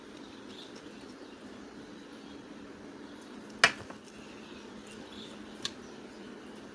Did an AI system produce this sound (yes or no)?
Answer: no